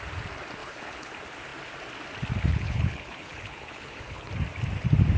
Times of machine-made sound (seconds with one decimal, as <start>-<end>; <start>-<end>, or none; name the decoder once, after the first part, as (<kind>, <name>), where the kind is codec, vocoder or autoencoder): 0.6-1.1 (codec, HILCodec); 2.5-4.3